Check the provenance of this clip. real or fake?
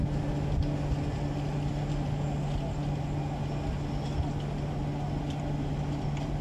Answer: real